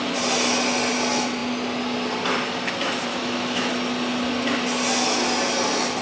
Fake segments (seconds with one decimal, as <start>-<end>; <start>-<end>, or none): 3.1-3.7